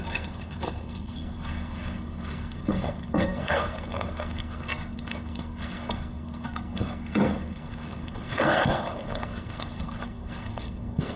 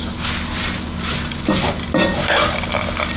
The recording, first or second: second